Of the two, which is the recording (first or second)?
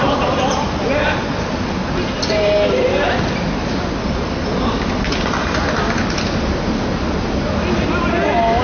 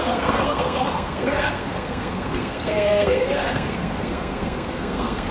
first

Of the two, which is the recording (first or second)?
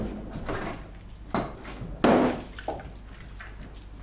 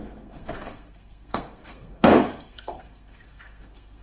first